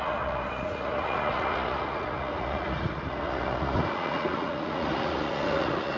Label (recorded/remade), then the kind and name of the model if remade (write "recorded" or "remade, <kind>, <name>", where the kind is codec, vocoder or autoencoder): remade, vocoder, Vocos